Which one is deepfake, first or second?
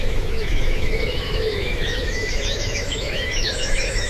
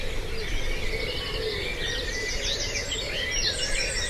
first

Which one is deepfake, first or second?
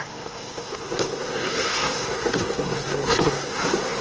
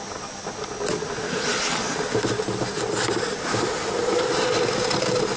first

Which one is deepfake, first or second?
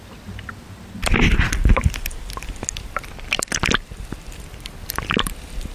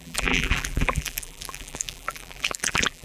second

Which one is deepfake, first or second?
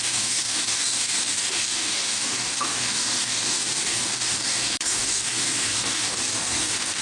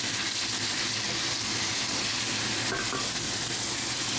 first